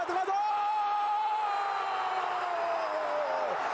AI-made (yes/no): no